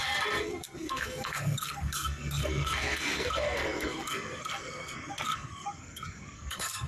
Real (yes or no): no